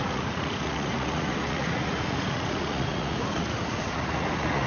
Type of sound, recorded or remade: remade